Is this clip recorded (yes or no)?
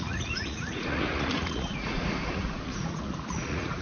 no